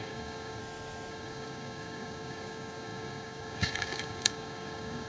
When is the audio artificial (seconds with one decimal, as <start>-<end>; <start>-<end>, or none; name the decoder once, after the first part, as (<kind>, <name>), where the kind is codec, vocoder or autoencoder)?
0.0-0.6 (codec, DAC); 1.1-5.1